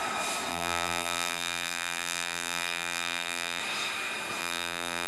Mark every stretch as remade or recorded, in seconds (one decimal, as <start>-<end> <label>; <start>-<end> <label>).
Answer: 0.0-0.5 recorded; 0.5-3.6 remade; 3.6-4.4 recorded; 4.4-5.1 remade